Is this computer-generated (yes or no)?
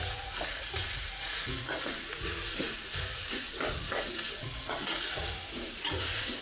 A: yes